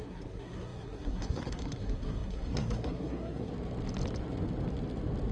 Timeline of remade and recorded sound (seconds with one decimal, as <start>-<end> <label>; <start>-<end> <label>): 0.0-3.5 remade; 3.5-5.3 recorded